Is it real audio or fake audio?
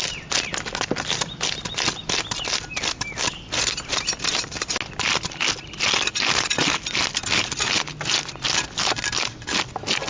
real